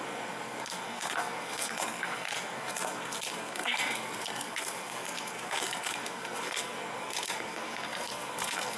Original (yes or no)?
no